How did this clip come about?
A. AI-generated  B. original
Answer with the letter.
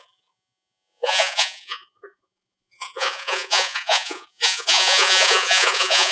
A